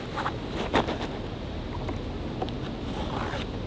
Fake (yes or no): no